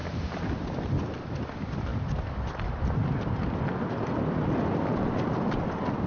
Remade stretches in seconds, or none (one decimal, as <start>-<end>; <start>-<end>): none